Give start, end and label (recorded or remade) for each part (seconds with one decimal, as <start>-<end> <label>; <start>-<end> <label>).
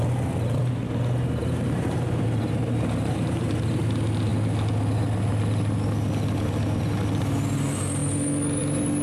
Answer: 0.0-1.4 recorded; 1.4-3.8 remade; 3.8-9.0 recorded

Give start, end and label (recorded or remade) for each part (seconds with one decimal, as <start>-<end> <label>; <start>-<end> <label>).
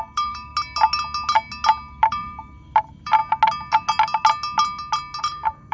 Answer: 0.0-0.5 remade; 0.5-2.0 recorded; 2.0-3.2 remade; 3.2-5.2 recorded; 5.2-5.7 remade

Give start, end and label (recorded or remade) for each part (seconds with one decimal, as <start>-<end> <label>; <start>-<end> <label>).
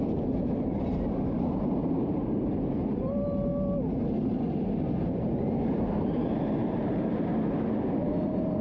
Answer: 0.0-3.5 remade; 3.5-4.6 recorded; 4.6-7.3 remade; 7.3-7.9 recorded; 7.9-8.6 remade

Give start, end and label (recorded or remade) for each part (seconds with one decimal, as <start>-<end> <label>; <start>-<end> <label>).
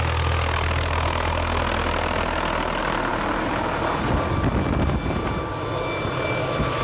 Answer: 0.0-6.8 recorded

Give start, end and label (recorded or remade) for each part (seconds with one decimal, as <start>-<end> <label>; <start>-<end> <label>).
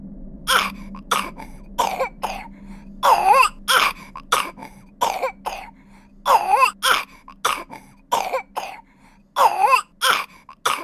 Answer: 0.0-10.8 recorded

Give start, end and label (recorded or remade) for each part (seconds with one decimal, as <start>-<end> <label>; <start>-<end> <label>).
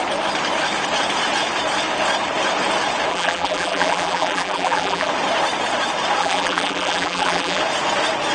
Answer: 0.0-3.1 recorded; 3.1-5.1 remade; 5.1-6.2 recorded; 6.2-7.6 remade; 7.6-8.3 recorded